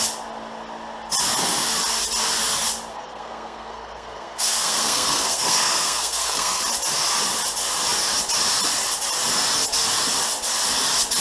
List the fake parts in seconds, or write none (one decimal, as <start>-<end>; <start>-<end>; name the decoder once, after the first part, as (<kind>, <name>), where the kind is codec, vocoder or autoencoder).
2.9-6.6 (codec, SNAC)